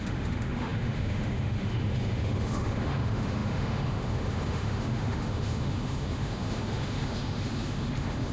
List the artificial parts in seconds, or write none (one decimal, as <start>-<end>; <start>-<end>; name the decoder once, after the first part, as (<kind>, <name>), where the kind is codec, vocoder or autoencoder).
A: 0.0-8.3 (autoencoder, DAC-VAE)